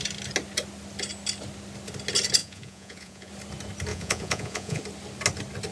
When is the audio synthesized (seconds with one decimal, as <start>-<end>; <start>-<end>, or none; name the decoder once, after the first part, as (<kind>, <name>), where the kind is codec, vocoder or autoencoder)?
2.4-3.3 (vocoder, Vocos); 3.9-4.8